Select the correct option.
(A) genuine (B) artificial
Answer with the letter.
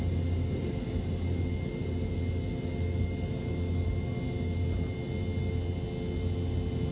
A